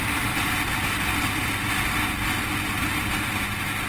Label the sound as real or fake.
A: real